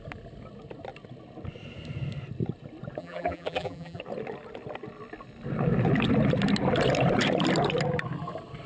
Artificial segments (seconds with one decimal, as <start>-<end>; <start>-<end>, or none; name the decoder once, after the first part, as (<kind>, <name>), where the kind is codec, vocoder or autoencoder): 3.0-4.0 (vocoder, BigVGAN v2)